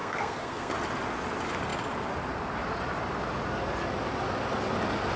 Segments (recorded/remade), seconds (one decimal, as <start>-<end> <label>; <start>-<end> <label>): 0.0-0.7 remade; 0.7-5.2 recorded